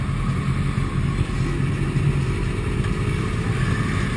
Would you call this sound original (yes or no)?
yes